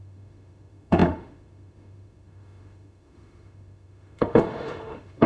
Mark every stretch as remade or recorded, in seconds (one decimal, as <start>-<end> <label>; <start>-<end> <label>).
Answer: 0.0-5.3 remade